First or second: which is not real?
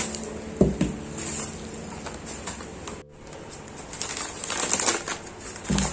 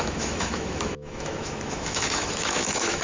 second